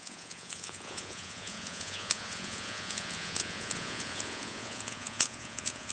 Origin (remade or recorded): remade